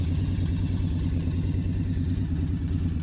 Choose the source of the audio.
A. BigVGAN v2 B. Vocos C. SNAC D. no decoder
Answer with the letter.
B